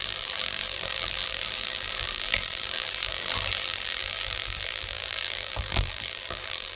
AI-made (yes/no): yes